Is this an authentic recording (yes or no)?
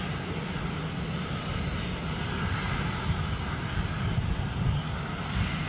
yes